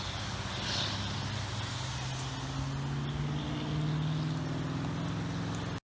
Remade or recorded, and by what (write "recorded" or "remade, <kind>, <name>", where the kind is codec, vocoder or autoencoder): recorded